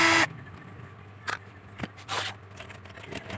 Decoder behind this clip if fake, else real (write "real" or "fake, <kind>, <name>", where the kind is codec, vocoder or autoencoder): fake, vocoder, BigVGAN v2